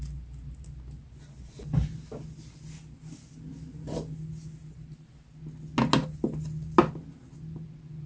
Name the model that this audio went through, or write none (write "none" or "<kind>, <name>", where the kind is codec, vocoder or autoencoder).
none